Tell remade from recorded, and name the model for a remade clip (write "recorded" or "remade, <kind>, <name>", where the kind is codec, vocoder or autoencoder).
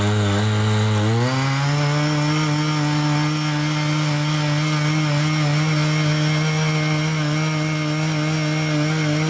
recorded